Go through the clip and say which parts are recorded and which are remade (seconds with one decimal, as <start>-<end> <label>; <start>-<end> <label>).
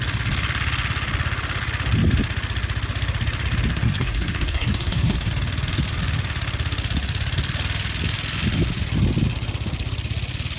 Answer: 0.0-3.7 recorded; 3.7-5.3 remade; 5.3-10.6 recorded